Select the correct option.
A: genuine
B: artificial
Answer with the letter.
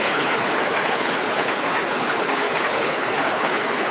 B